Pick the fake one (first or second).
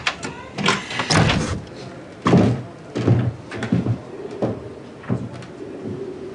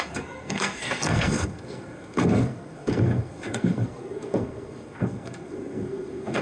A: second